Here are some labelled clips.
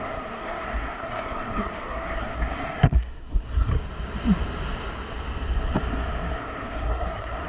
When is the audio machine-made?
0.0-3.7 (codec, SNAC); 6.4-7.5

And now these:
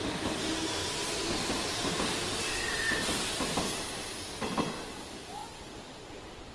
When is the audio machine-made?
none

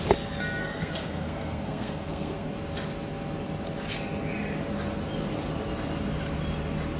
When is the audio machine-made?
0.6-2.5 (codec, SNAC)

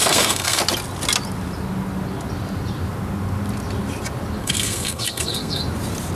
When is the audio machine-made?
0.0-0.6 (codec, SNAC); 4.4-5.6

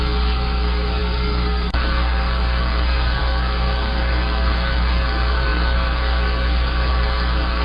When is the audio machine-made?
0.0-7.6 (codec, SNAC)

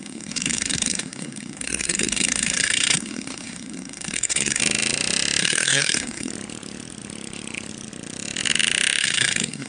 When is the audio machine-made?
0.0-4.6 (codec, SNAC); 5.4-6.3; 9.0-9.7

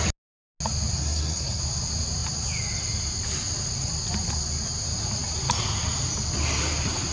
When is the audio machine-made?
1.0-1.6 (codec, SNAC)